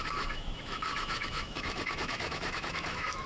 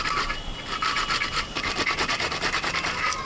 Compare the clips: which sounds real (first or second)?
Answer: second